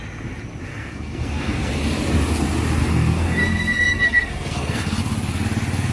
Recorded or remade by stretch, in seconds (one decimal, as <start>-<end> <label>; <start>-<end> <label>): 0.0-0.7 recorded; 0.7-1.7 remade; 1.7-2.8 recorded; 2.8-5.0 remade; 5.0-5.9 recorded